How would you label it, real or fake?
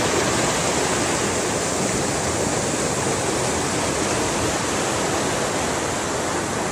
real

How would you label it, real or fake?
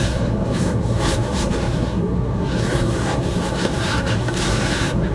fake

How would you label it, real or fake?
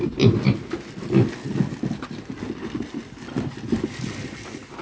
real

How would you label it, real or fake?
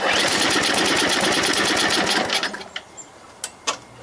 real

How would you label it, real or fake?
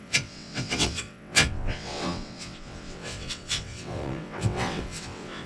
fake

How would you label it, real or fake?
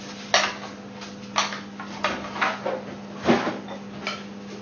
real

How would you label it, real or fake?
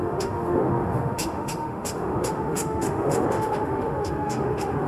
fake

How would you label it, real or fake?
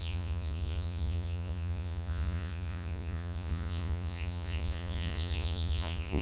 fake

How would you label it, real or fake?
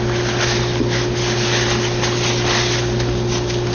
real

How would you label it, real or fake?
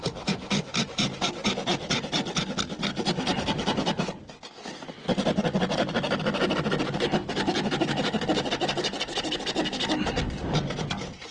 real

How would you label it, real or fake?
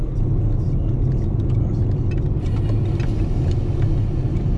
real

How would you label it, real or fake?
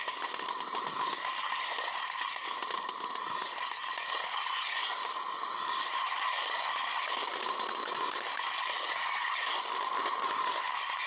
real